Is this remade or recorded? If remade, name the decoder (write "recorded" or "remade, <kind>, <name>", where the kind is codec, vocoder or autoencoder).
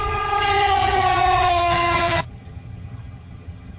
remade, vocoder, HiFi-GAN